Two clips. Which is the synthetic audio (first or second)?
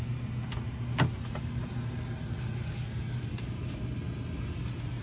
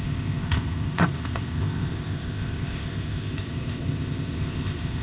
second